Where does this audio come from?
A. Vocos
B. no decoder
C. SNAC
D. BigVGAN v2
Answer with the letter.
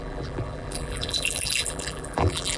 D